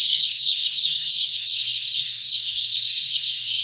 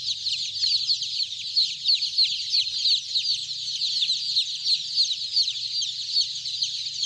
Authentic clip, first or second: second